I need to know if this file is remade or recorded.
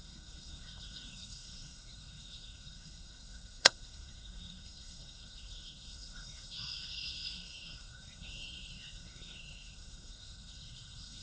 remade